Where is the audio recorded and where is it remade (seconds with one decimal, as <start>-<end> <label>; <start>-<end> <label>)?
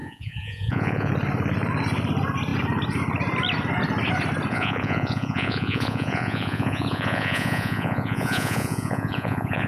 0.0-1.1 remade; 1.1-4.5 recorded; 4.5-9.7 remade